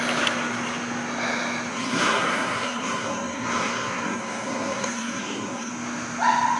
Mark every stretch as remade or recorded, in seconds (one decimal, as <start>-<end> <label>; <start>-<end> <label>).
0.0-1.7 recorded; 1.7-5.7 remade; 5.7-6.6 recorded